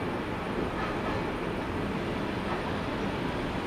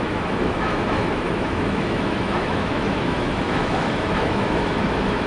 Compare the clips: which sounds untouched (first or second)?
first